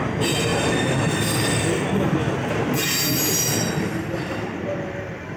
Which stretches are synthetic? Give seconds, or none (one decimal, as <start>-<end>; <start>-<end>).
none

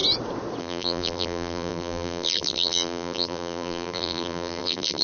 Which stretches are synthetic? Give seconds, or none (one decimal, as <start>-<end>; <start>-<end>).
0.6-5.0